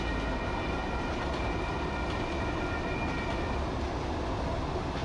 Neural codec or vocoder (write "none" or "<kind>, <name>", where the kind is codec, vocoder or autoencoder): none